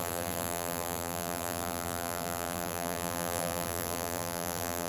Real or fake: fake